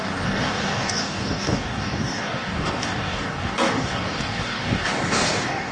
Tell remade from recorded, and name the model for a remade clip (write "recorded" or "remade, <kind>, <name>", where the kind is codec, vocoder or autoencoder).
remade, codec, DAC